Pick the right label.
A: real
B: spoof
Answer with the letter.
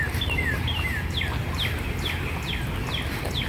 A